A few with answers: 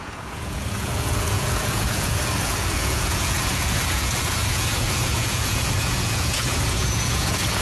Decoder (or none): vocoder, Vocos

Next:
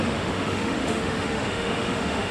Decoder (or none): autoencoder, DAC-VAE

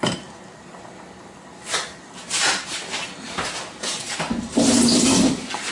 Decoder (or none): none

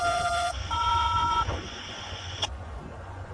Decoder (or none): vocoder, Vocos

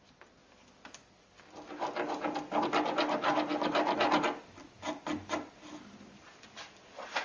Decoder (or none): none